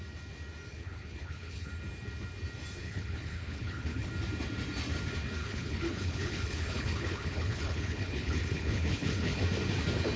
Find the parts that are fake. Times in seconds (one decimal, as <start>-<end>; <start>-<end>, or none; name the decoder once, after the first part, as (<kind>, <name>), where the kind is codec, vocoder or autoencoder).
0.7-1.7 (codec, HILCodec); 2.8-4.1; 5.4-9.4